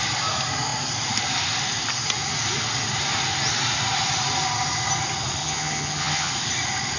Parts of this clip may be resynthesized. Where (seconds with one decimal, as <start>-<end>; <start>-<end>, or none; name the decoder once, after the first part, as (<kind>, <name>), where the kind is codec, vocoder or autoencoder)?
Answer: 5.4-6.3 (vocoder, HiFi-GAN)